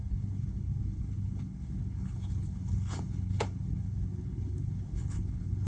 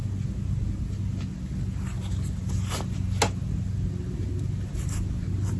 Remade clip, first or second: first